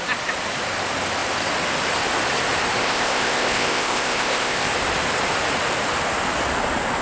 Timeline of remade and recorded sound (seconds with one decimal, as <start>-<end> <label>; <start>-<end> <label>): 0.0-2.8 recorded; 2.8-4.7 remade; 4.7-7.0 recorded